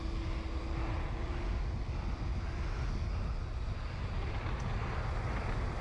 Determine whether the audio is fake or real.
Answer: real